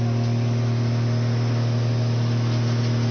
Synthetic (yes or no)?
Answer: no